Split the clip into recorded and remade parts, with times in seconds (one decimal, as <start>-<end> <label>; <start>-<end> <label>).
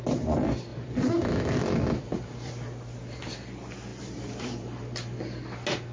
0.0-0.7 recorded; 0.7-2.5 remade; 2.5-3.9 recorded; 3.9-5.4 remade; 5.4-5.9 recorded